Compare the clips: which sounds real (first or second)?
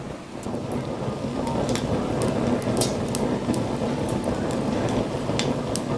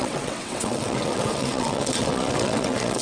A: first